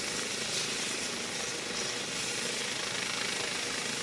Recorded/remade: recorded